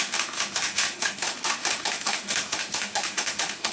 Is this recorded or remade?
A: remade